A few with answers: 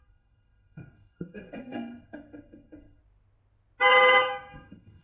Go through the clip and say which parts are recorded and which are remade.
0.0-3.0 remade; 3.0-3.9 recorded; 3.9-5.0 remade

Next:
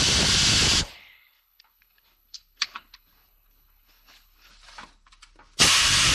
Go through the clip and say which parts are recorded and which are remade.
0.0-0.8 recorded; 0.8-4.5 remade; 4.5-6.1 recorded

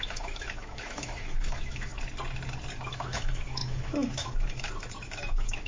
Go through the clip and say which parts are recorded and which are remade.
0.0-1.9 remade; 1.9-2.9 recorded; 2.9-5.7 remade

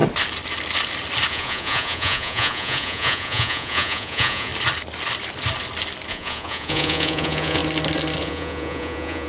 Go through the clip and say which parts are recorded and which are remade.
0.0-1.3 recorded; 1.3-4.5 remade; 4.5-6.1 recorded; 6.1-7.6 remade; 7.6-8.2 recorded; 8.2-9.3 remade

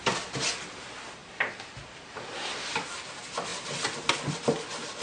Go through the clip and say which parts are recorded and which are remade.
0.0-5.0 recorded

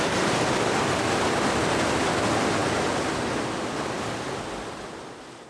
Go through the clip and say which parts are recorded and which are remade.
0.0-5.5 recorded

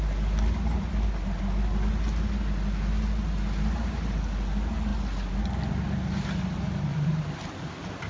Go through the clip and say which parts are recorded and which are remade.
0.0-6.9 recorded; 6.9-7.5 remade; 7.5-8.1 recorded